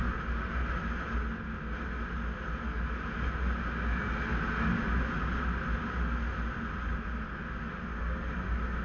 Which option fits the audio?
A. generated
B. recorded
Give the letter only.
B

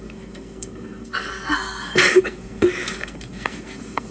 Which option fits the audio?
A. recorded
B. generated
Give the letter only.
B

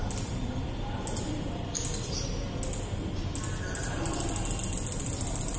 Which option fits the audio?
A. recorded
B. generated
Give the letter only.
A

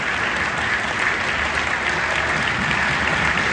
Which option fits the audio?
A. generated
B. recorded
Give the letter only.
B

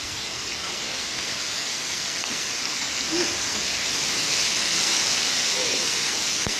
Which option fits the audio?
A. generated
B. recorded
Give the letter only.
A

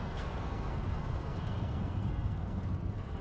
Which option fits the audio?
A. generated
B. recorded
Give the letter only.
A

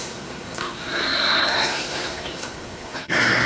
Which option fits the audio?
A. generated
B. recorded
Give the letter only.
A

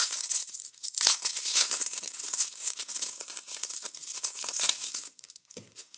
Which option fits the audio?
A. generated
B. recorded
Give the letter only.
A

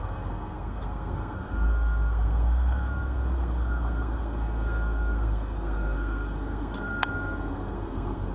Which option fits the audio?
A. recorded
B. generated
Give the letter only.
B